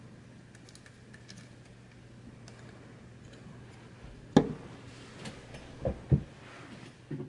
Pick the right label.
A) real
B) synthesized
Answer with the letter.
A